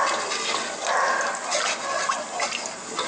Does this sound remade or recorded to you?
recorded